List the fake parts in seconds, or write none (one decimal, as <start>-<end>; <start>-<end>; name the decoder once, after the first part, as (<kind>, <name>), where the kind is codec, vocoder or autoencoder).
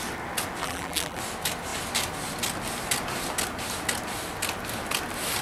0.6-1.2 (vocoder, BigVGAN v2)